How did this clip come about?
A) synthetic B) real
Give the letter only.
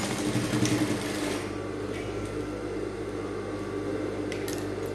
B